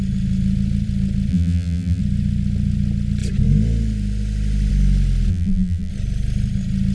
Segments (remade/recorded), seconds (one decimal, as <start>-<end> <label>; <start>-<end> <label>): 0.0-1.3 recorded; 1.3-2.0 remade; 2.0-5.3 recorded; 5.3-5.9 remade; 5.9-6.9 recorded